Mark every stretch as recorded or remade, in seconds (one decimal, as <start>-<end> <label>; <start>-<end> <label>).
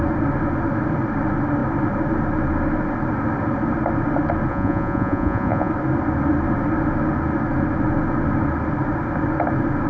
0.0-4.5 recorded; 4.5-5.7 remade; 5.7-9.9 recorded